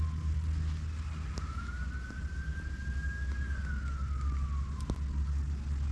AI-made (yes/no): no